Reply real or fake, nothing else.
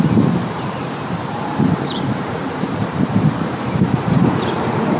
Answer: fake